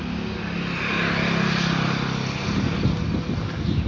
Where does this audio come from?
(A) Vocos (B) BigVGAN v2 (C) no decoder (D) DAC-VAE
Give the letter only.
C